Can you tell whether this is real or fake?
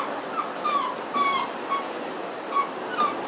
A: real